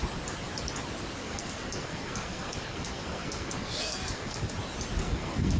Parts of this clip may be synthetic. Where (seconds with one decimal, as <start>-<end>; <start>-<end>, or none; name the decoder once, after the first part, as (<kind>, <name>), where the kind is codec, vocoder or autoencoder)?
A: 1.2-4.5 (codec, SNAC); 5.0-5.6